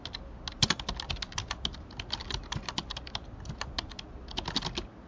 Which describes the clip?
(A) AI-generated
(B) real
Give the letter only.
B